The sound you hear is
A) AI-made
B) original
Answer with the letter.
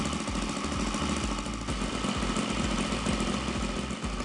B